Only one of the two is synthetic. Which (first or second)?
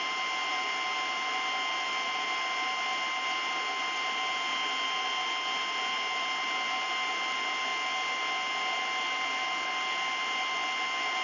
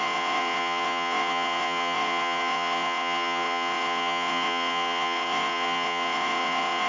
second